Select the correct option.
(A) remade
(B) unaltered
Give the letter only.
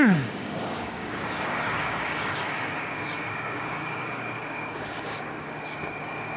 A